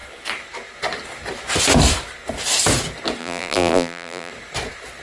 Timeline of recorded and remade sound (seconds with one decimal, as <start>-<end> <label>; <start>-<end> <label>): 0.0-3.2 recorded; 3.2-4.3 remade; 4.3-5.0 recorded